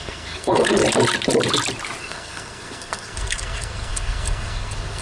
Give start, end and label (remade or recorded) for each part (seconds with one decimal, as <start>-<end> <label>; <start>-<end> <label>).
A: 0.0-0.8 remade; 0.8-2.0 recorded; 2.0-5.0 remade